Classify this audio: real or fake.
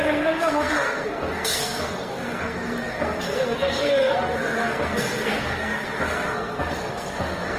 fake